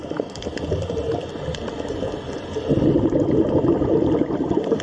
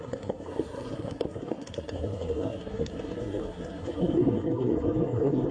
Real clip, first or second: first